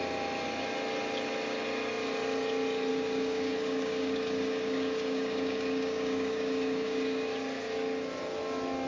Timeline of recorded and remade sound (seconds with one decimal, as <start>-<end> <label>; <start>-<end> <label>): 0.0-2.9 recorded; 2.9-7.3 remade; 7.3-8.9 recorded